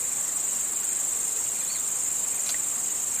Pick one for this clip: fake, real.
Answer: real